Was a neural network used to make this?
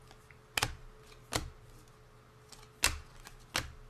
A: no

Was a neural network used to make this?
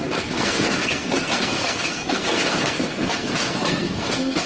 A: yes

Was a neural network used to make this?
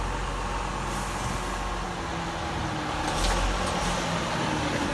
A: no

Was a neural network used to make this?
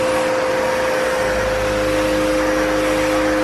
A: no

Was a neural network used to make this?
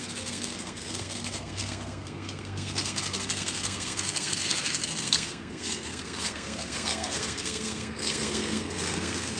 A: yes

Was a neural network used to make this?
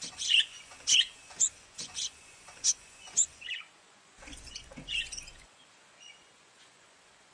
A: yes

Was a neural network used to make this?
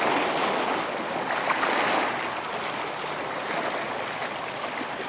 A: no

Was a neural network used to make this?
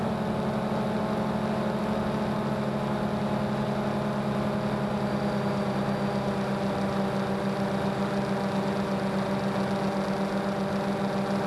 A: no